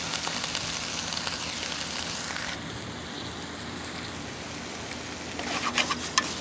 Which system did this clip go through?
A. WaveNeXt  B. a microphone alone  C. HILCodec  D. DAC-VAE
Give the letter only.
B